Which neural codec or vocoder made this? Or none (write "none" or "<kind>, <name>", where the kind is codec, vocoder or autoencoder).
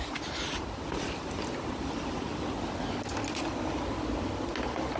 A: none